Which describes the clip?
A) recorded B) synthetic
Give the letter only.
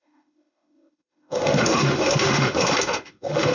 B